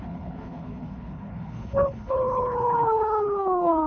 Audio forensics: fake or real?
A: fake